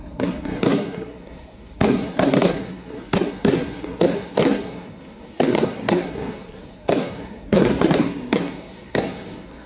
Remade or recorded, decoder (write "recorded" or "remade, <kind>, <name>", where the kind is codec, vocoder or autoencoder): remade, codec, SNAC